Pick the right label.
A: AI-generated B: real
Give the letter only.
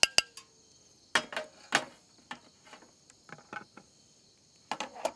B